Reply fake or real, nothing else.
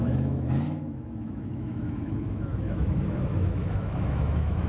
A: fake